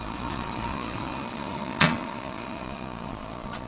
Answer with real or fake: fake